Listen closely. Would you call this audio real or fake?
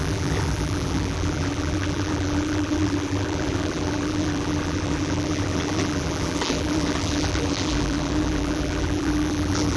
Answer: fake